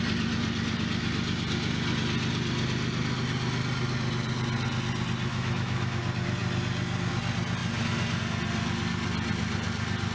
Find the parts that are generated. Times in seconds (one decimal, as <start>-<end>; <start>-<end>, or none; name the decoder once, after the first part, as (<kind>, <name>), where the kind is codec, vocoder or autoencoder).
5.3-6.0 (autoencoder, DAC-VAE)